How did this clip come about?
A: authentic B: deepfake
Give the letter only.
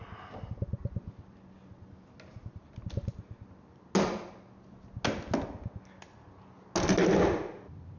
A